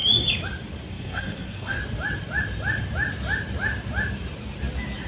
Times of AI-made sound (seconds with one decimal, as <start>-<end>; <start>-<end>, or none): 0.9-1.8

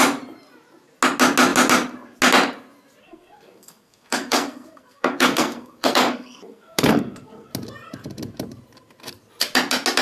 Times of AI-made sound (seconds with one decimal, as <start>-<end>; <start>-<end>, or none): 3.0-7.5

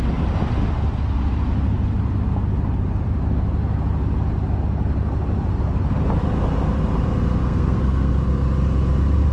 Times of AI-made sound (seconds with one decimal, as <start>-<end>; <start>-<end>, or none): 7.4-8.1